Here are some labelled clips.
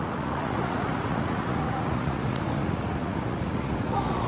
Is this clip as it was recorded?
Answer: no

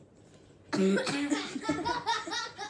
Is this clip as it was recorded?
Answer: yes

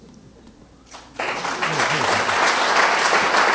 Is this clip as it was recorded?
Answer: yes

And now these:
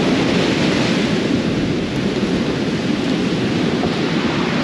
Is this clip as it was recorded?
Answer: yes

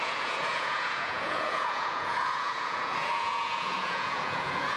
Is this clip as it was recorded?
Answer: no